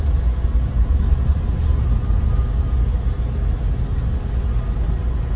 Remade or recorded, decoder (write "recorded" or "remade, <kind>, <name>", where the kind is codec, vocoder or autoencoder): recorded